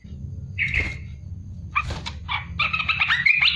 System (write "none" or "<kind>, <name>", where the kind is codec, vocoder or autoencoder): none